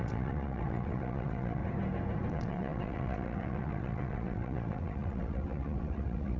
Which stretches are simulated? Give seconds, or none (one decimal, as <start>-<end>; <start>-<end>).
0.0-1.6; 2.3-6.4

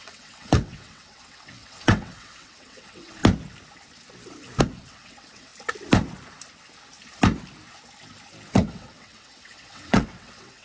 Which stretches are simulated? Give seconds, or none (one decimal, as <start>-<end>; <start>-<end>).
0.0-3.2; 4.6-5.5; 8.5-10.6

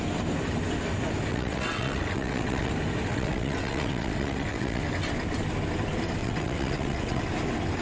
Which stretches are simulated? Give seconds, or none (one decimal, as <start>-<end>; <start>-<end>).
1.3-2.7; 3.1-4.8; 6.2-7.2

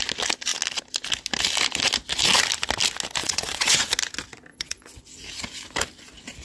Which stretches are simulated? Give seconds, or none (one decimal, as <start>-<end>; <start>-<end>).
3.2-3.9; 4.5-5.0

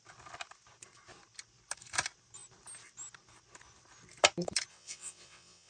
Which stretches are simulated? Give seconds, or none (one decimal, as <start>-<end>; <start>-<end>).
4.7-5.7

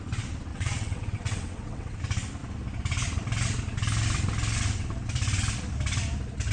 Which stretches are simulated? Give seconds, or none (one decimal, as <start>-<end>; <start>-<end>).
0.5-2.0

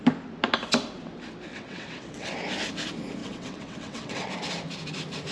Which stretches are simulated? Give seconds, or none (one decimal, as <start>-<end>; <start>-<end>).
1.5-2.3; 3.2-4.3

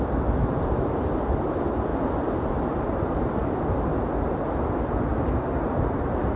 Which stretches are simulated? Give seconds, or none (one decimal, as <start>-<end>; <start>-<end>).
none